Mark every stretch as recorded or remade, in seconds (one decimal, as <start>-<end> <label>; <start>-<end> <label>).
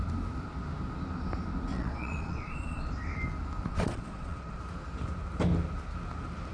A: 0.0-1.7 recorded; 1.7-2.9 remade; 2.9-3.7 recorded; 3.7-4.6 remade; 4.6-6.5 recorded